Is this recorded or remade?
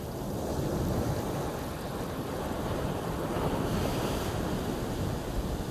recorded